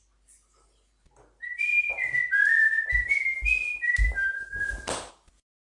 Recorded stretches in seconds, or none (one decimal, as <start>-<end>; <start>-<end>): 0.0-5.7